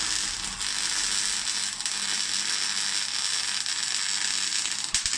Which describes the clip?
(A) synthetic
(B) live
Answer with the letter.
B